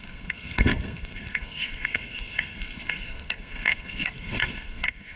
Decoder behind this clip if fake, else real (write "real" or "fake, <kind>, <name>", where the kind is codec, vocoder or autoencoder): fake, codec, SNAC